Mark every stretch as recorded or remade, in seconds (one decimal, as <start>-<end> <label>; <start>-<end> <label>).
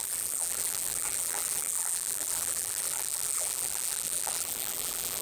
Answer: 0.0-5.2 remade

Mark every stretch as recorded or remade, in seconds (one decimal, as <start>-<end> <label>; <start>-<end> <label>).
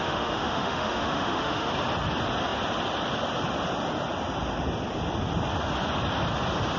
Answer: 0.0-1.7 remade; 1.7-6.8 recorded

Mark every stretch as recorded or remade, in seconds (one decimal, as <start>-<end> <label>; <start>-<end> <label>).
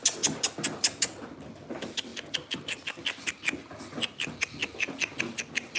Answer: 0.0-5.8 recorded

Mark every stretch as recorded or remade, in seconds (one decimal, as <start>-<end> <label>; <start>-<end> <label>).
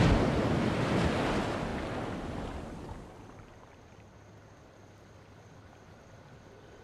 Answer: 0.0-6.8 recorded